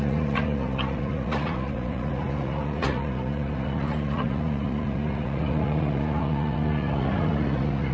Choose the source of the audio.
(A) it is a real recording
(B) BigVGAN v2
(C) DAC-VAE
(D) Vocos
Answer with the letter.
D